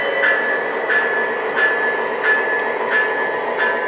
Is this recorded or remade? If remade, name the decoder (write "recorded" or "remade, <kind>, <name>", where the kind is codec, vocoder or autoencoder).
recorded